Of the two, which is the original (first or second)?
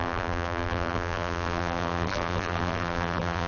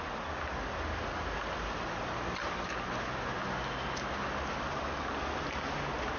second